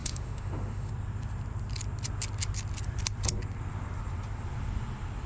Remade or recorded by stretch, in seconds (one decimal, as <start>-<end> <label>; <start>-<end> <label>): 0.0-0.9 remade; 0.9-5.3 recorded